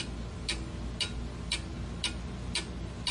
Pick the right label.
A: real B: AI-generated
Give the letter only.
A